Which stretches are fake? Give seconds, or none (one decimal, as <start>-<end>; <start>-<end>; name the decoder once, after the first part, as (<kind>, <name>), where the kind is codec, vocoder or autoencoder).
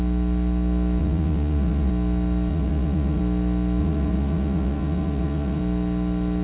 1.0-1.9 (vocoder, Vocos); 2.5-3.2; 3.8-5.6